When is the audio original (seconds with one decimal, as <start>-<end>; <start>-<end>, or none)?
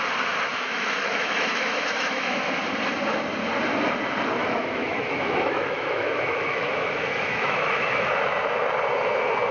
0.0-0.5; 2.4-4.4; 8.1-9.5